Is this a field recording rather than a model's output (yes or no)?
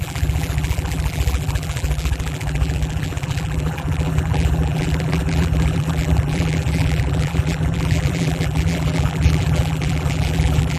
no